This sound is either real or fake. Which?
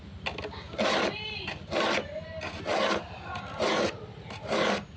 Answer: real